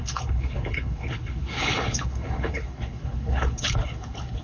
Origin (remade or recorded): remade